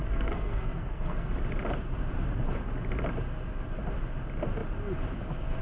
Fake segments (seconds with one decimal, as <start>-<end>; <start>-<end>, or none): 0.0-1.3

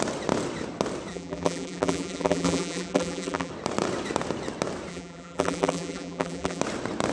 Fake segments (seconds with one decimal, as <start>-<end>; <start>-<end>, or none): 1.1-3.5; 4.9-6.6